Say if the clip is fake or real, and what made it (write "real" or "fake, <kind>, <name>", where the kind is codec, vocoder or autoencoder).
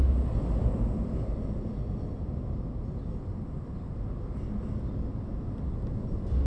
real